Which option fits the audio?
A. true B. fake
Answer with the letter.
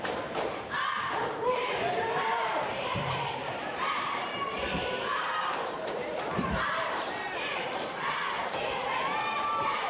B